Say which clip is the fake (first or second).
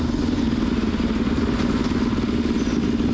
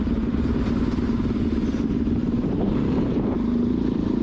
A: second